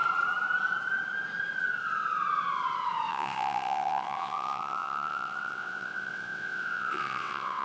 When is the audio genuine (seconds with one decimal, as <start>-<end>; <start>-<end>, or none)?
0.0-3.1